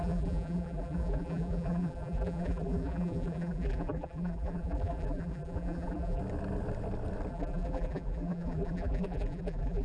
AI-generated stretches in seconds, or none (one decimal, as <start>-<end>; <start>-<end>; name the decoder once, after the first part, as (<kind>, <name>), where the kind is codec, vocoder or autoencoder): 0.0-6.2 (vocoder, BigVGAN v2); 7.3-9.8